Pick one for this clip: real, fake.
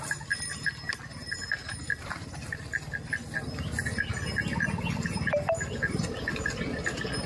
real